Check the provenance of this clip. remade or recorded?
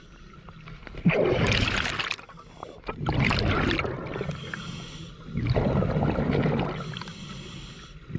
recorded